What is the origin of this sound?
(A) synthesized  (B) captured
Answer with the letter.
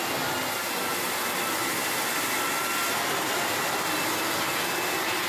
B